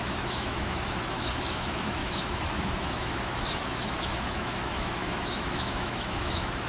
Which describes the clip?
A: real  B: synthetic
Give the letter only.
B